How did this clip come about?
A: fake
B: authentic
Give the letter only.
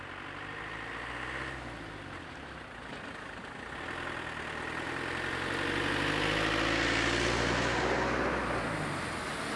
B